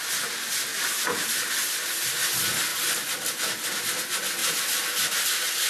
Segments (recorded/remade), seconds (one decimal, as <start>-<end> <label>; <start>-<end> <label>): 0.0-0.7 recorded; 0.7-1.3 remade; 1.3-4.4 recorded; 4.4-4.9 remade; 4.9-5.7 recorded